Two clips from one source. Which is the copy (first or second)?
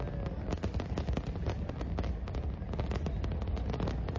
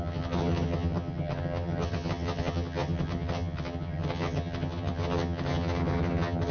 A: second